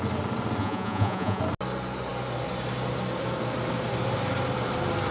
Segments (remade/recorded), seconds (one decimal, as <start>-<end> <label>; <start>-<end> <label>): 0.0-0.6 recorded; 0.6-1.4 remade; 1.4-5.1 recorded